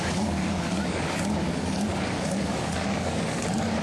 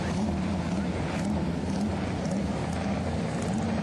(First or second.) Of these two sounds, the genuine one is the second